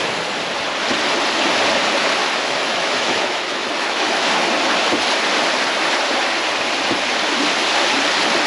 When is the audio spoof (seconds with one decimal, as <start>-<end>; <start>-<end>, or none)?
2.2-4.3